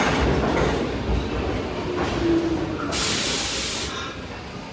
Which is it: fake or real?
real